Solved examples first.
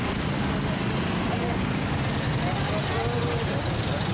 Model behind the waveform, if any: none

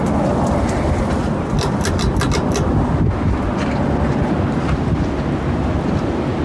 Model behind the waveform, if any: none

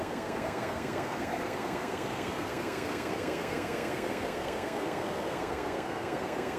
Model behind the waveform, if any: codec, SNAC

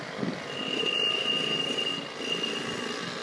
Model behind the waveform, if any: none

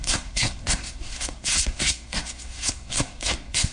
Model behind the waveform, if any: codec, SNAC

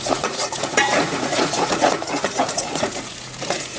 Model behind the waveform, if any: vocoder, Vocos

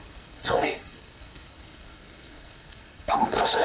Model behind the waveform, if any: codec, SNAC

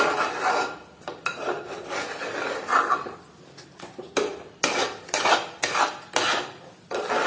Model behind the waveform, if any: none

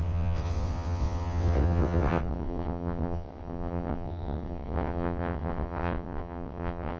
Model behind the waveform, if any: vocoder, WaveNeXt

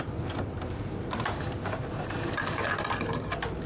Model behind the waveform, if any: none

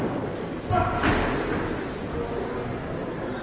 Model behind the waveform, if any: none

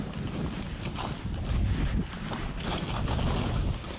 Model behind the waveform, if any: none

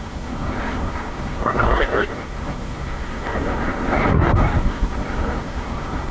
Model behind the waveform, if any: codec, SNAC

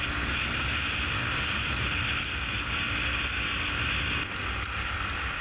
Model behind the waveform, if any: none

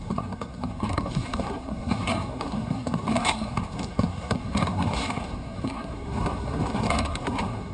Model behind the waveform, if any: codec, SNAC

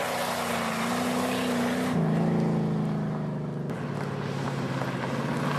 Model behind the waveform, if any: none